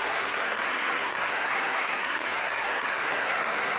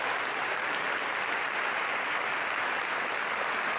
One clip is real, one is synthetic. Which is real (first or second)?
second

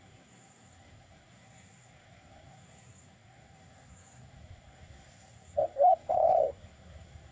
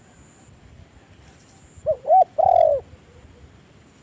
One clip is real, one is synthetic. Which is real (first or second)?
second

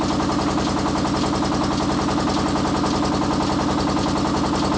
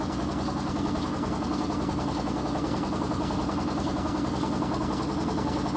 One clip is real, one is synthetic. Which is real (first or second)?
first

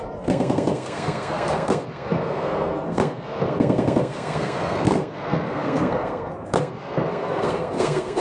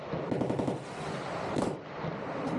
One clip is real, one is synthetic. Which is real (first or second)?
second